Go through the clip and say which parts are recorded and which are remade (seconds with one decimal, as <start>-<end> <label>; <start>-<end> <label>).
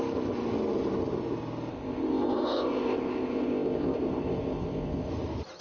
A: 0.0-1.7 recorded; 1.7-5.1 remade; 5.1-5.6 recorded